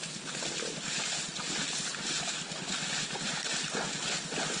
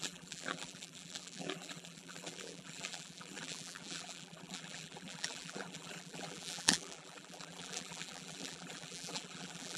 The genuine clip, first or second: first